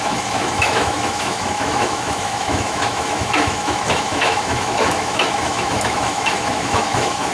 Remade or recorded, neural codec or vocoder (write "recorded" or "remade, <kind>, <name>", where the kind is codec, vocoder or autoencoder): remade, autoencoder, DAC-VAE